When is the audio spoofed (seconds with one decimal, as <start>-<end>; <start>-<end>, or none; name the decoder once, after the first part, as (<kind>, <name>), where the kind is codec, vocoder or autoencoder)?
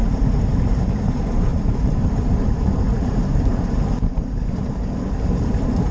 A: 0.0-5.9 (vocoder, BigVGAN v2)